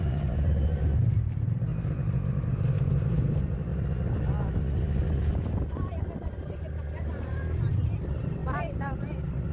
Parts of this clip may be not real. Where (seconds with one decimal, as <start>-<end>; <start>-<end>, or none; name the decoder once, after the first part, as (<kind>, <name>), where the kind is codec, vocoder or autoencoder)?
0.0-3.7 (vocoder, BigVGAN v2); 8.0-8.4